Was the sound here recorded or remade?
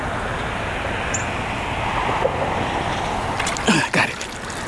recorded